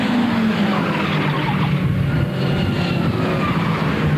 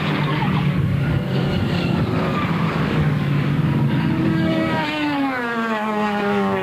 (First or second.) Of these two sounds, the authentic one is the first